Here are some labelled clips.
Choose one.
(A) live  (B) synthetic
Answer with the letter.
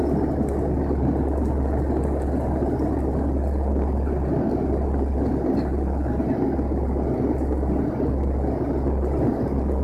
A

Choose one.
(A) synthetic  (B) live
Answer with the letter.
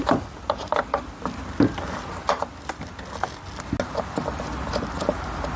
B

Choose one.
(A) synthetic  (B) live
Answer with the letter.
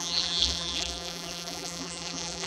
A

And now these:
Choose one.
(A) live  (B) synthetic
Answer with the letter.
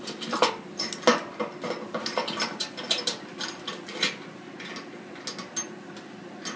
A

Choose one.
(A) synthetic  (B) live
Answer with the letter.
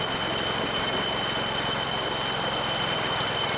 B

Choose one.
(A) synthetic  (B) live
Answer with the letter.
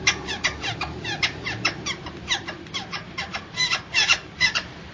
A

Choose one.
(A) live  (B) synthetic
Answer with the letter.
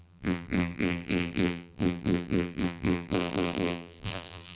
B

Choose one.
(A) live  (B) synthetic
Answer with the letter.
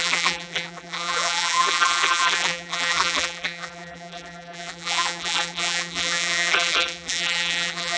B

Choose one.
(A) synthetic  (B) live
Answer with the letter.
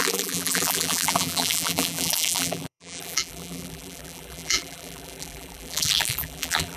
A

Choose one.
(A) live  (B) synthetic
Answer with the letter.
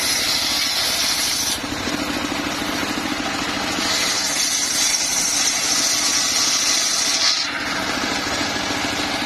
A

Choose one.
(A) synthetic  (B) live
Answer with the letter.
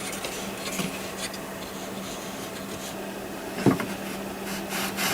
B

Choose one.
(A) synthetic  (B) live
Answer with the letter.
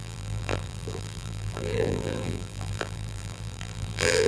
A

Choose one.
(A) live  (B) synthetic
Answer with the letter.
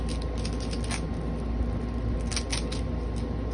A